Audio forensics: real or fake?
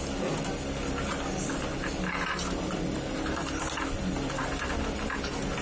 real